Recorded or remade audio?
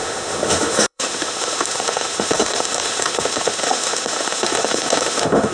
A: remade